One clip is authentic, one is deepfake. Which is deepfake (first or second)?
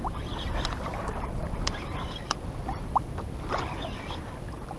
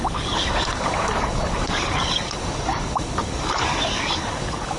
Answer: second